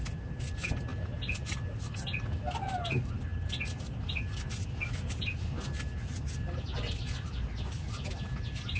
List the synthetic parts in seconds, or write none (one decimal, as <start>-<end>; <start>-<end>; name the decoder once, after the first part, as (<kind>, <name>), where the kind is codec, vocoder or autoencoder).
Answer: 0.9-1.8 (vocoder, BigVGAN v2)